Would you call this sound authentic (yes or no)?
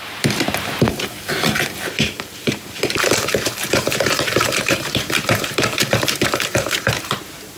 no